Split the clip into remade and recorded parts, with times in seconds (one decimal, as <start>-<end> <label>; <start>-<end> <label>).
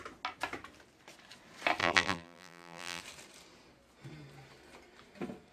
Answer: 0.0-1.8 recorded; 1.8-3.0 remade; 3.0-5.5 recorded